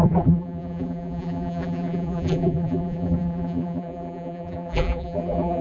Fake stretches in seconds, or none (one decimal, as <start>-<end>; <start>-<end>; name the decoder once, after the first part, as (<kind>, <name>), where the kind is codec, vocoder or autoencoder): 0.0-5.6 (vocoder, BigVGAN v2)